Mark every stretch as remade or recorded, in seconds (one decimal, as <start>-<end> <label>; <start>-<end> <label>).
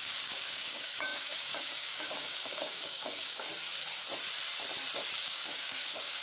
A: 0.0-3.5 remade; 3.5-5.2 recorded; 5.2-6.2 remade